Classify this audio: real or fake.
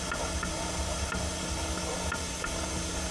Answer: real